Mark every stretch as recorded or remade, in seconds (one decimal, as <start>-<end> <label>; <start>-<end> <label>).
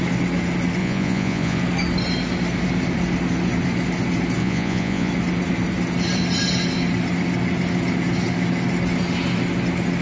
0.0-0.8 recorded; 0.8-1.6 remade; 1.6-4.4 recorded; 4.4-5.1 remade; 5.1-10.0 recorded